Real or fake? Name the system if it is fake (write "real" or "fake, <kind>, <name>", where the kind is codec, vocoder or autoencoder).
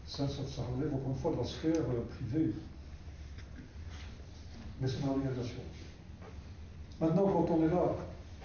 real